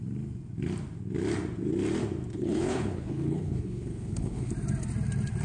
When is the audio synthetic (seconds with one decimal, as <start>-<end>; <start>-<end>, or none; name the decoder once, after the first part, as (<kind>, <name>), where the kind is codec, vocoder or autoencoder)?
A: 2.3-4.5 (codec, HILCodec)